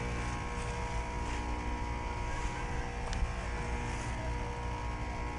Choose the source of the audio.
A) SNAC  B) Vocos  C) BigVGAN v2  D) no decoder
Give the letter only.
D